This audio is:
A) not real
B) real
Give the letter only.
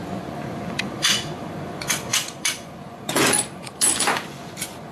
A